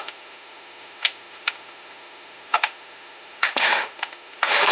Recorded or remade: remade